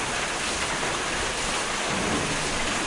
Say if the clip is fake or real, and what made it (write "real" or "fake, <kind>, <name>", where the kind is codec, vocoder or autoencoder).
real